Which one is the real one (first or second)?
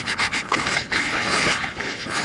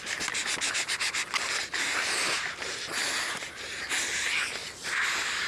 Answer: second